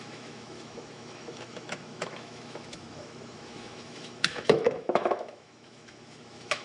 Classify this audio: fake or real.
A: fake